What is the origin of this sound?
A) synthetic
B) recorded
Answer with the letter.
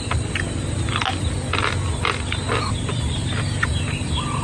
B